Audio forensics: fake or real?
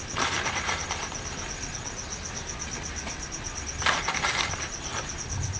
real